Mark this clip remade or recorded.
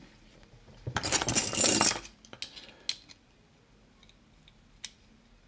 recorded